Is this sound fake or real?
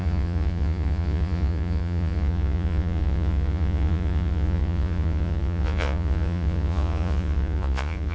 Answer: fake